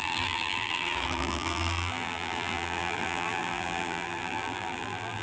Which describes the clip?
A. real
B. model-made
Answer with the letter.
B